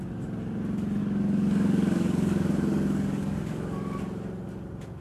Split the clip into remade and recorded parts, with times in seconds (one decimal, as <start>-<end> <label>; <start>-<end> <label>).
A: 0.0-1.0 recorded; 1.0-4.0 remade; 4.0-5.0 recorded